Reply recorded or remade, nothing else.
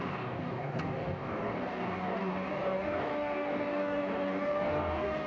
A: remade